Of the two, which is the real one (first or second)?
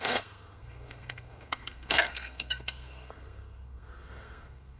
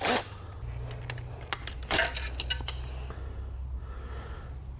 second